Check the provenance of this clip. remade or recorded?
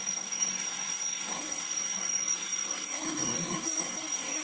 remade